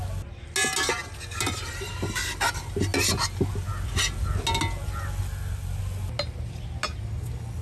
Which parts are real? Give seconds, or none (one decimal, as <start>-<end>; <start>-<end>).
0.0-7.6